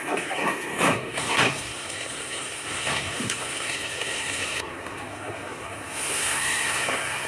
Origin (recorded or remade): remade